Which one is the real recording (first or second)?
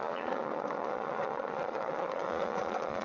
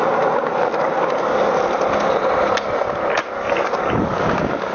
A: second